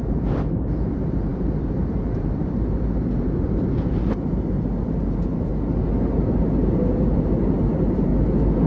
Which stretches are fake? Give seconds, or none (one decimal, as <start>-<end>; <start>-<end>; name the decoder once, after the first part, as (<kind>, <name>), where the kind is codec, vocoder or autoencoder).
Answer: 0.0-5.5 (vocoder, BigVGAN v2); 6.9-8.1